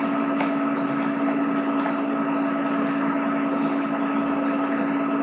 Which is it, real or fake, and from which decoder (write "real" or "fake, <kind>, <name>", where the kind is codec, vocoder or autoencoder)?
real